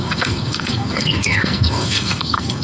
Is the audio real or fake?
fake